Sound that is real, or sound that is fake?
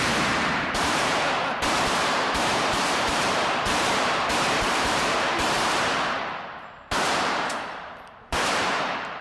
fake